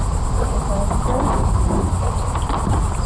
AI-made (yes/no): no